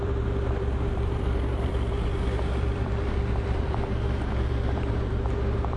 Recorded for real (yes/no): no